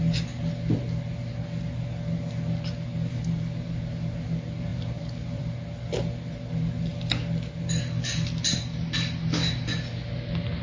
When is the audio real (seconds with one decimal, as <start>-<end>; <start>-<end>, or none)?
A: 0.0-4.7; 5.5-10.6